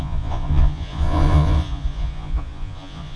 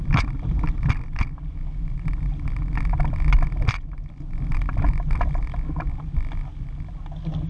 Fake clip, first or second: first